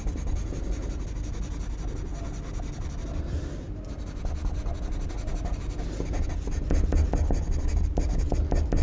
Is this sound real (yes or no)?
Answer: yes